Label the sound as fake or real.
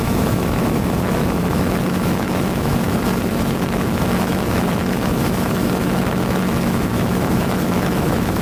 fake